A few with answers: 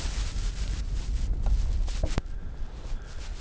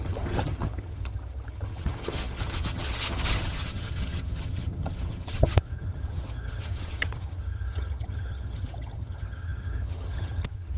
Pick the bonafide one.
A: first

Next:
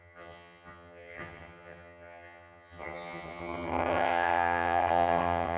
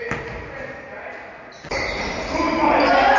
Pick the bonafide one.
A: second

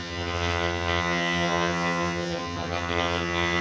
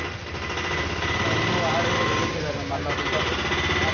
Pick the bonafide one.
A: second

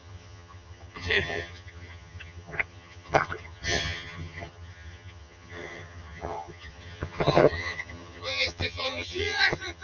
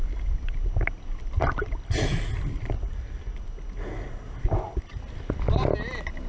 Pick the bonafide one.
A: second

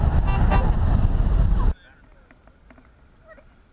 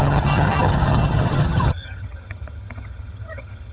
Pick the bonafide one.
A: first